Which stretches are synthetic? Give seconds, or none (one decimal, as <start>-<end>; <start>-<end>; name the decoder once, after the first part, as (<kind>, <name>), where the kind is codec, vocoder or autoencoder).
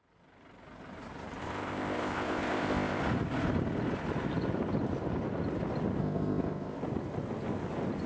1.4-3.0 (codec, ZipCodec); 6.0-6.8